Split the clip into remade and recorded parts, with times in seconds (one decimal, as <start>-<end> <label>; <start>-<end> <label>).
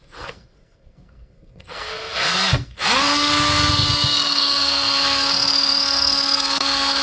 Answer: 0.0-7.0 remade